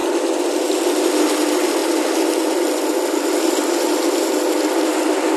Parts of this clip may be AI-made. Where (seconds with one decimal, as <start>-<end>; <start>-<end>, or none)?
none